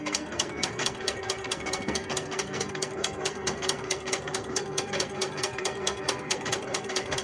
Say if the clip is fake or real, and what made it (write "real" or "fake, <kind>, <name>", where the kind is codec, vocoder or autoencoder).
fake, codec, SNAC